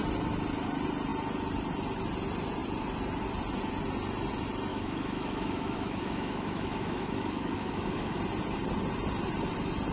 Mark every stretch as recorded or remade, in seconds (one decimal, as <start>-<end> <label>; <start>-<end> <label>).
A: 0.0-4.7 recorded; 4.7-8.2 remade; 8.2-9.9 recorded